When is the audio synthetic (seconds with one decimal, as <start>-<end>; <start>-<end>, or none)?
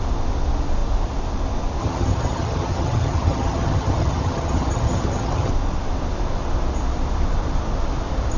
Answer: 1.8-5.5